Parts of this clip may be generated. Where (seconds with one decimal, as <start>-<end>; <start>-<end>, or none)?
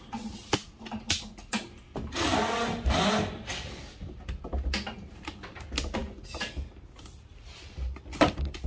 none